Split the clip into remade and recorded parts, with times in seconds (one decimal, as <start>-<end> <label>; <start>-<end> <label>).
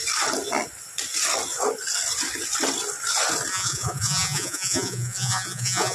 0.0-3.5 recorded; 3.5-5.9 remade